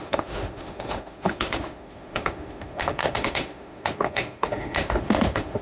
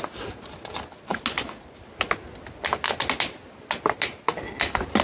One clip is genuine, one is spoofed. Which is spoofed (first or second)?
first